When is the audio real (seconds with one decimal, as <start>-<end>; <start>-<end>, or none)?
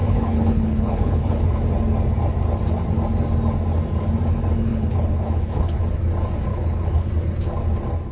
1.6-4.7; 5.8-6.5; 7.1-8.1